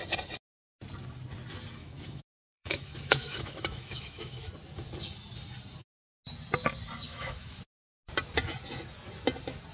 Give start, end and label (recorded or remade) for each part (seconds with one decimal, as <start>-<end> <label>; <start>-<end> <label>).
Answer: 0.0-1.8 recorded; 1.8-4.5 remade; 4.5-7.1 recorded; 7.1-7.6 remade; 7.6-9.7 recorded

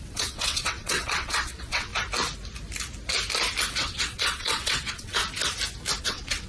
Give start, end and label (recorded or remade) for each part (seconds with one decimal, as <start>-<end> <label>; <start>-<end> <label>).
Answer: 0.0-1.9 remade; 1.9-3.7 recorded; 3.7-5.2 remade; 5.2-6.0 recorded; 6.0-6.5 remade

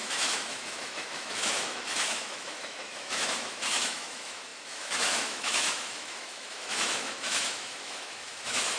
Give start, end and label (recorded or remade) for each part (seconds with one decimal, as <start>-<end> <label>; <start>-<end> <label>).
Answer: 0.0-8.8 remade

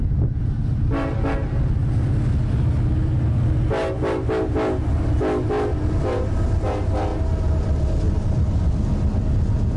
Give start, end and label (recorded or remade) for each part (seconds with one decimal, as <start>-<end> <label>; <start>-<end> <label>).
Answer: 0.0-9.8 recorded